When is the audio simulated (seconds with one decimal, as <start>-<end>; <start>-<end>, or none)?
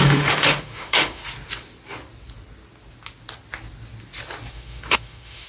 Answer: 0.0-1.2; 4.5-5.5